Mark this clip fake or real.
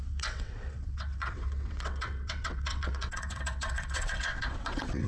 fake